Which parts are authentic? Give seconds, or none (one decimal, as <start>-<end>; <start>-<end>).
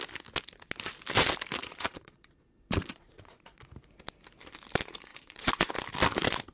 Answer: 0.0-1.6; 3.6-5.1; 5.7-6.5